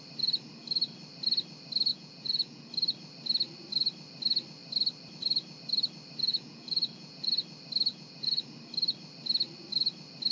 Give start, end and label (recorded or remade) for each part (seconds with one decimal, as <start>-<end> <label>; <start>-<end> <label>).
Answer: 0.0-1.9 recorded; 1.9-2.7 remade; 2.7-6.3 recorded; 6.3-7.4 remade; 7.4-7.9 recorded; 7.9-8.4 remade; 8.4-10.3 recorded